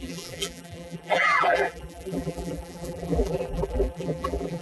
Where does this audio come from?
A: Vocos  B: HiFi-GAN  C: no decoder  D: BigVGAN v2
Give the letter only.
D